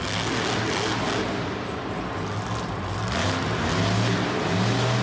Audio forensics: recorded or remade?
recorded